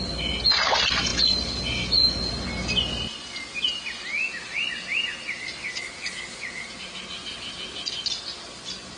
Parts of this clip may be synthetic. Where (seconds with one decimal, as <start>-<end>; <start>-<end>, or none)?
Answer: none